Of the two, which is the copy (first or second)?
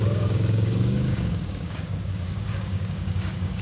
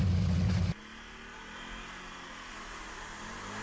first